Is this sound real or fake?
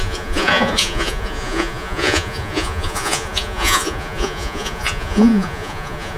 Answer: fake